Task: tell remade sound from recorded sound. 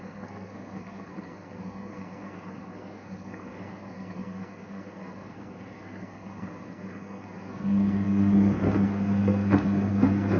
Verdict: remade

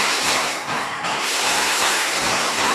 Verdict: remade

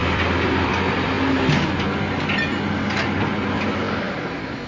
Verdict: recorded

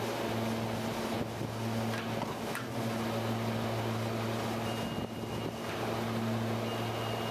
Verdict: recorded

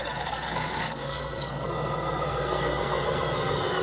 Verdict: remade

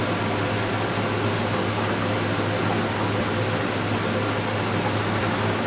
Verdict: recorded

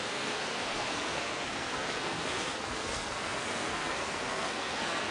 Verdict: remade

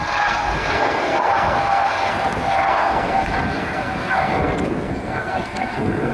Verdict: remade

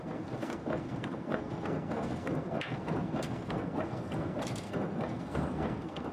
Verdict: remade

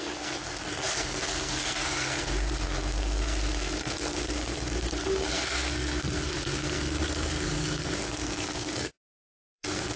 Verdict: remade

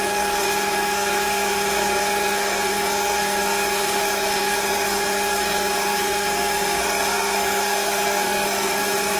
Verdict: remade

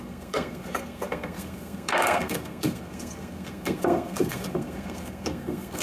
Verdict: remade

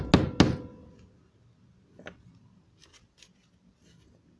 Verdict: recorded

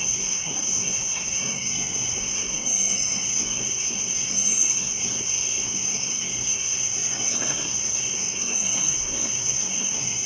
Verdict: remade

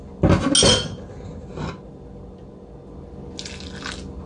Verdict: recorded